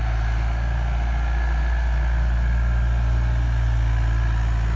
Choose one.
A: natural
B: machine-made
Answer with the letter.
A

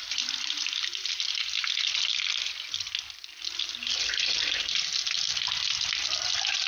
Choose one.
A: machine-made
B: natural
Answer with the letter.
B